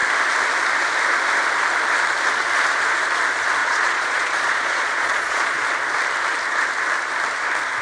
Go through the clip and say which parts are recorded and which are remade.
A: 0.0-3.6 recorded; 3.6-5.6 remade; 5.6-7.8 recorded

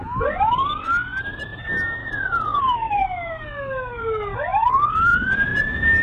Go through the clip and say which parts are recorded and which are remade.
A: 0.0-2.0 recorded; 2.0-2.6 remade; 2.6-5.1 recorded; 5.1-6.0 remade

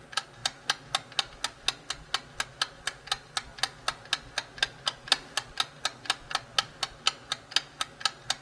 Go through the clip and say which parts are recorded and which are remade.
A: 0.0-8.4 recorded

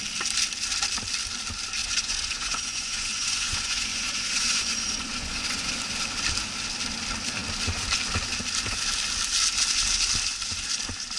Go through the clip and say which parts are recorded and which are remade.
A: 0.0-1.8 recorded; 1.8-5.7 remade; 5.7-11.2 recorded

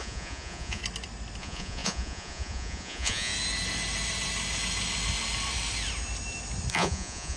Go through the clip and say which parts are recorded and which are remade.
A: 0.0-0.8 remade; 0.8-1.4 recorded; 1.4-3.3 remade; 3.3-6.7 recorded; 6.7-7.4 remade

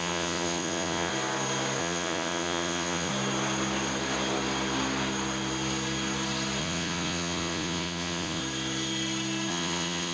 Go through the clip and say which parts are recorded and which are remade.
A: 0.0-1.1 remade; 1.1-1.8 recorded; 1.8-3.1 remade; 3.1-6.6 recorded; 6.6-8.4 remade; 8.4-9.5 recorded; 9.5-10.1 remade

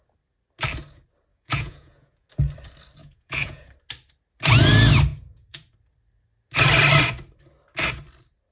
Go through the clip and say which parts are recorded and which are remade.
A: 0.0-1.3 recorded; 1.3-2.3 remade; 2.3-3.0 recorded; 3.0-3.7 remade; 3.7-5.1 recorded; 5.1-5.7 remade; 5.7-8.5 recorded

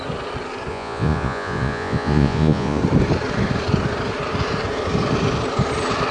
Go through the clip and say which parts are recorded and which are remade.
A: 0.0-0.7 recorded; 0.7-2.8 remade; 2.8-6.1 recorded